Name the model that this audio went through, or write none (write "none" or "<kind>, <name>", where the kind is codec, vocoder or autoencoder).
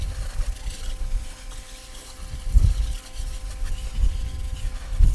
none